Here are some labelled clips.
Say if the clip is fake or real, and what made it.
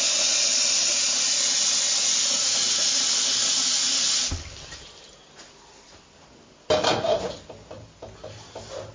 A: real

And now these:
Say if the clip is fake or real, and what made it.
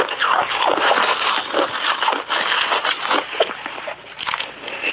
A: real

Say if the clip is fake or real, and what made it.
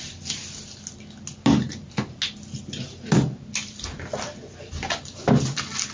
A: real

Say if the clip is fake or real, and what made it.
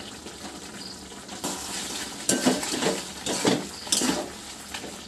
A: real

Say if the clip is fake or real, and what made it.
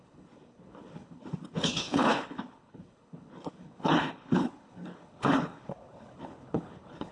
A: fake, codec, HILCodec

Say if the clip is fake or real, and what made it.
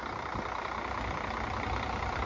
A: real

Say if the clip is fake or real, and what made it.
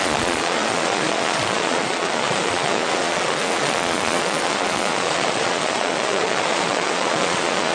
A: fake, vocoder, Vocos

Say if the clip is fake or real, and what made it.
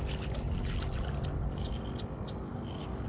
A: real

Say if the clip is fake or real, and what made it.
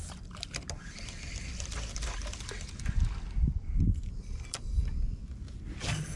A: real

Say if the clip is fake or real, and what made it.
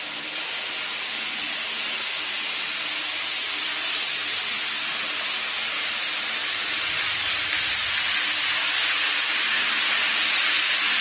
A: real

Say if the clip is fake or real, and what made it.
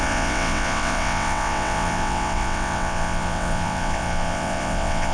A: fake, vocoder, WaveNeXt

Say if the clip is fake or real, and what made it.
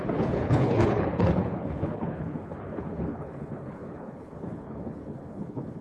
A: fake, codec, HILCodec